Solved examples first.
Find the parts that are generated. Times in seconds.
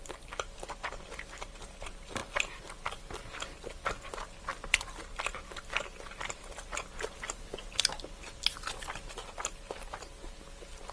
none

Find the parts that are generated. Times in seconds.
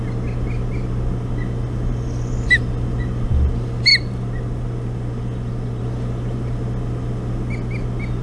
none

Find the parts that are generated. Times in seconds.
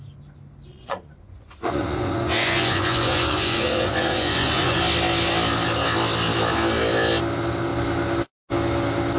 0.7-4.8 (vocoder, Vocos)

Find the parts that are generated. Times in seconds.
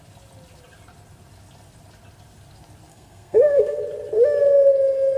2.9-3.8 (codec, SNAC)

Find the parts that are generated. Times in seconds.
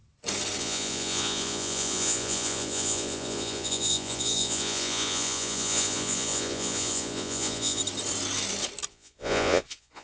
0.6-7.8 (vocoder, Vocos); 8.9-10.0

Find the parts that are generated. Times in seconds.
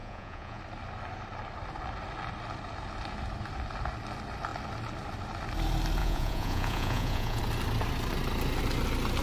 0.0-0.6 (vocoder, Vocos); 6.0-7.4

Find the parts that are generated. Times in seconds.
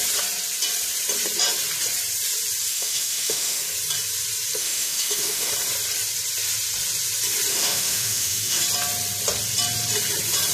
2.7-3.6 (autoencoder, DAC-VAE); 4.6-5.5; 7.5-8.6